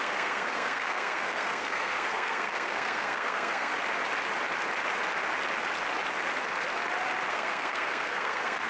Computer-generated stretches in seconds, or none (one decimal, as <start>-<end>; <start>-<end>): 0.0-3.7; 7.3-8.7